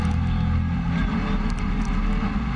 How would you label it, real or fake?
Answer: real